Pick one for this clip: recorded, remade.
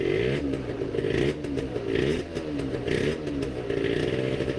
recorded